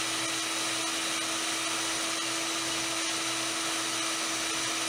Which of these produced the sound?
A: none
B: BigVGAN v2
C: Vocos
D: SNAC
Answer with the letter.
A